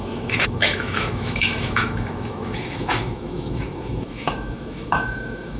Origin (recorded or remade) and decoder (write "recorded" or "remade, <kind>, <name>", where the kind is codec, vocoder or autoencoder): remade, autoencoder, DAC-VAE